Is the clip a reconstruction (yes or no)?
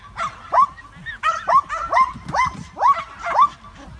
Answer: no